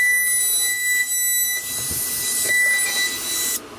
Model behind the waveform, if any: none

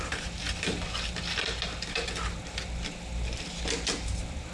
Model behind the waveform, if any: none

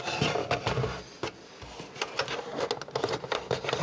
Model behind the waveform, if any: none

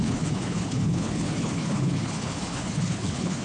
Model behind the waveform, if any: codec, HILCodec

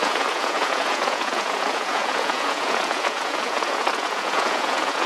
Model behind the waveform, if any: vocoder, Vocos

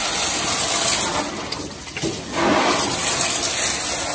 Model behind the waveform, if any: none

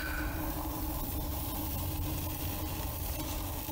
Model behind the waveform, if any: none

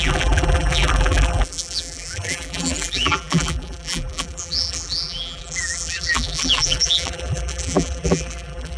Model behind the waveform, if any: vocoder, BigVGAN v2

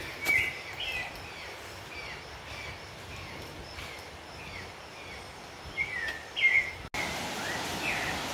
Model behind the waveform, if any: none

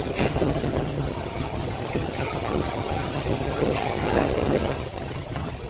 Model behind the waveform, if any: vocoder, HiFi-GAN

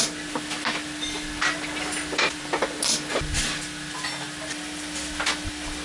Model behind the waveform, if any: none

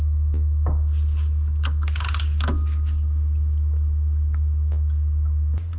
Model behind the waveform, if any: none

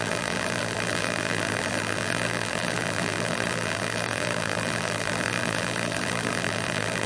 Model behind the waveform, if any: vocoder, BigVGAN v2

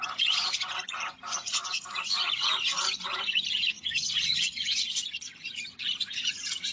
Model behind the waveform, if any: vocoder, Vocos